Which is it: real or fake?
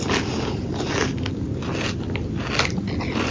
real